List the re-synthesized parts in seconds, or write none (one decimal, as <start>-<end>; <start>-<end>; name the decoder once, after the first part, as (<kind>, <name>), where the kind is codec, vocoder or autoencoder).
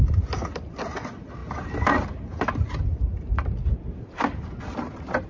none